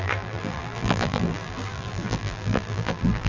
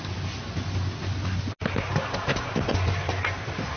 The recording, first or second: second